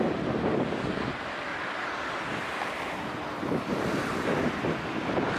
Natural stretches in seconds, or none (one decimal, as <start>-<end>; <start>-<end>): 0.0-0.5; 1.1-1.5; 2.1-5.4